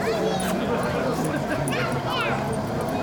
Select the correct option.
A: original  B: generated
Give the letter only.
A